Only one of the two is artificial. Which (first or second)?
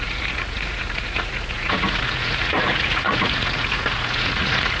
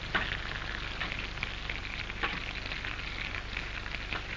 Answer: first